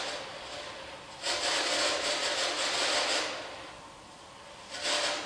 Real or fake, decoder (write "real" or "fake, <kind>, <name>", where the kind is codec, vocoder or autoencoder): real